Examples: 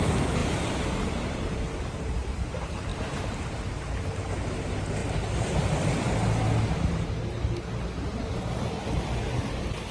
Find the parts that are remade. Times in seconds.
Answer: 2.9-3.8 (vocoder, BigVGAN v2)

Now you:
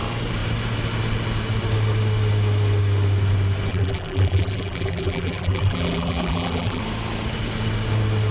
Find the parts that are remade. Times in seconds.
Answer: 3.7-6.8 (vocoder, BigVGAN v2)

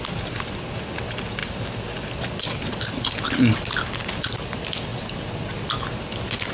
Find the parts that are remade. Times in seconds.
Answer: none

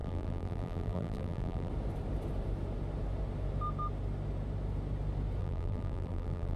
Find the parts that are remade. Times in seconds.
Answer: 0.0-1.7 (vocoder, BigVGAN v2); 5.4-6.6

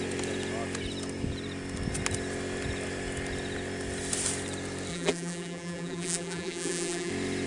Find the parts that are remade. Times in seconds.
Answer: 4.9-7.1 (vocoder, BigVGAN v2)

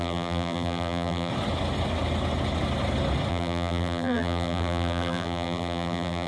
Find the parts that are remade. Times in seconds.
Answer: 0.0-1.3 (vocoder, BigVGAN v2); 3.3-6.3

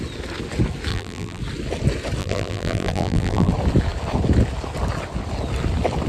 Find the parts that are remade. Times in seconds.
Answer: 0.9-1.4 (vocoder, BigVGAN v2); 2.2-3.5